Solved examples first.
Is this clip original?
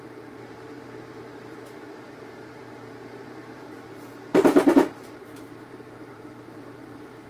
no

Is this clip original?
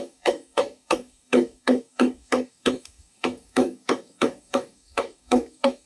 no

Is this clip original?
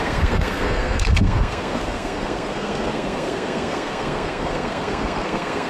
no